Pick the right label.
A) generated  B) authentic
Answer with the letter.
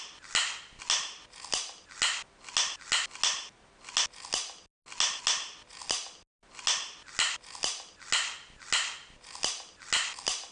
B